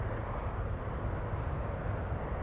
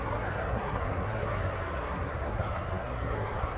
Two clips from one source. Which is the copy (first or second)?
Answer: second